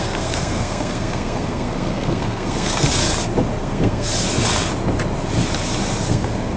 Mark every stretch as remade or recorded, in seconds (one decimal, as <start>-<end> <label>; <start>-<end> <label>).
0.0-3.0 remade; 3.0-3.6 recorded; 3.6-4.1 remade; 4.1-6.1 recorded; 6.1-6.6 remade